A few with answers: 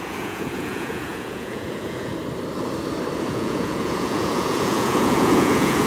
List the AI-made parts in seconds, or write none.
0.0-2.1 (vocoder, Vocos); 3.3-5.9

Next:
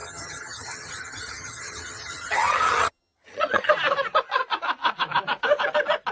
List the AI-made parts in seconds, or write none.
0.0-3.7 (vocoder, HiFi-GAN)

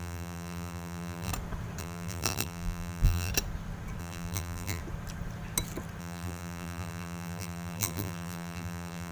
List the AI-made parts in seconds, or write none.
0.0-1.3 (vocoder, BigVGAN v2); 1.8-3.3; 4.0-4.8; 6.0-9.1